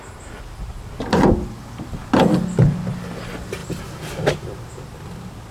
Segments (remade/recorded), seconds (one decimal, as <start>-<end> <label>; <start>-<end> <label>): 0.0-2.0 remade; 2.0-2.9 recorded; 2.9-3.6 remade; 3.6-4.7 recorded; 4.7-5.5 remade